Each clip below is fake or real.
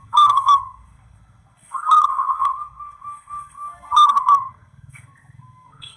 fake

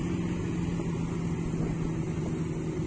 real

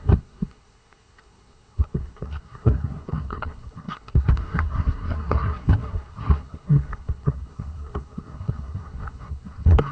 fake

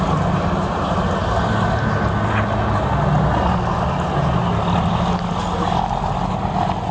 real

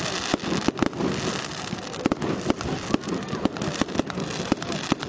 real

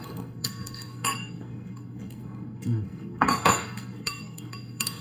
fake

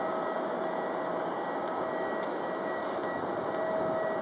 real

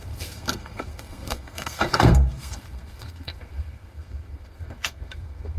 fake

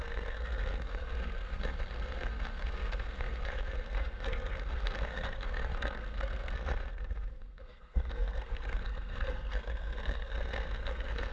fake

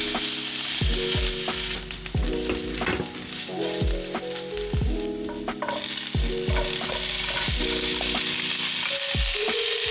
real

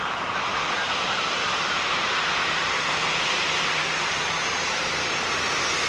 real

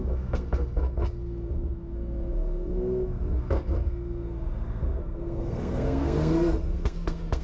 fake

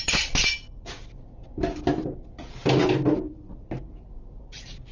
real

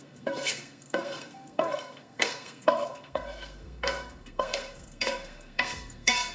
fake